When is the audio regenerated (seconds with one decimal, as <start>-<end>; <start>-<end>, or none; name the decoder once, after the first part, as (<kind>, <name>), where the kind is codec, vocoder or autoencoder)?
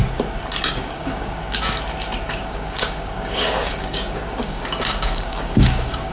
0.7-1.4 (codec, DAC); 2.3-6.1